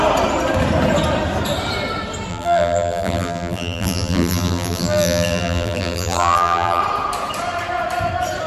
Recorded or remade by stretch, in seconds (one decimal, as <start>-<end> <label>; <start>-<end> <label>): 0.0-2.3 recorded; 2.3-6.8 remade; 6.8-8.5 recorded